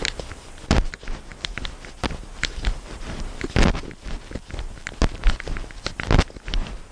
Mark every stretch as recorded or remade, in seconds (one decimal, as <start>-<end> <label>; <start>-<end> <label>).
0.0-6.9 recorded